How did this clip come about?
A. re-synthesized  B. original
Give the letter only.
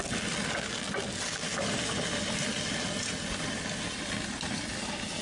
B